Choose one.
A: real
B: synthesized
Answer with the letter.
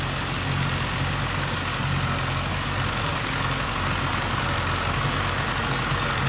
A